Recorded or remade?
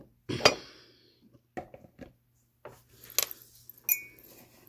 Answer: recorded